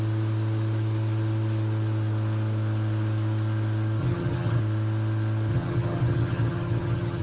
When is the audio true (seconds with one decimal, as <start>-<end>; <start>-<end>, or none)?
0.0-4.0; 4.6-5.5